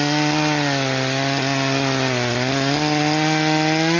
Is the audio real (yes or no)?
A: yes